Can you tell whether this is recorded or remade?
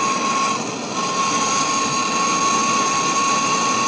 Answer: recorded